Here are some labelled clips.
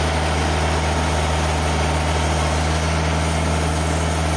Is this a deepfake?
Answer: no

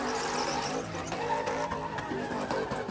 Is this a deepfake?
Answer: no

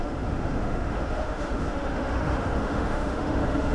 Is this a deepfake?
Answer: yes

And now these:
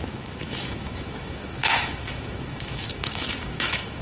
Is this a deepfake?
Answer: yes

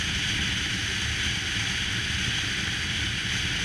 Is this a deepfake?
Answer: no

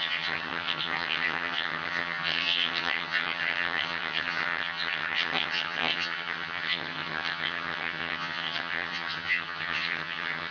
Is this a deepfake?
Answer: yes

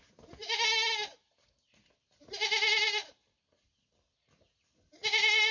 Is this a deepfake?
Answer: no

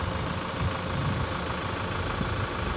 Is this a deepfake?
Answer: no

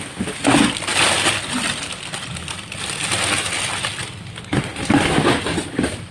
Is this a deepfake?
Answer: no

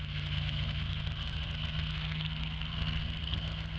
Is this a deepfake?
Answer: yes